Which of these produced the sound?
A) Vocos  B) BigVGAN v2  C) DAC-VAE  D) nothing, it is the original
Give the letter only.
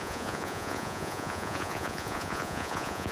A